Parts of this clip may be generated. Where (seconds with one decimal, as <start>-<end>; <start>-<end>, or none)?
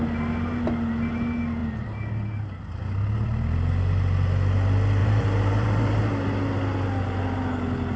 5.0-6.0